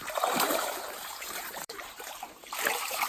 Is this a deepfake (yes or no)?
yes